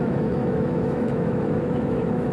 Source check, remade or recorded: remade